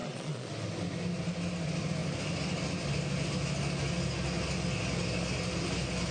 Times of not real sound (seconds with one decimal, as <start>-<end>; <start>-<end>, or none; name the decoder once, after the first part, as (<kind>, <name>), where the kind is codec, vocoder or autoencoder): 0.0-0.5 (vocoder, Vocos)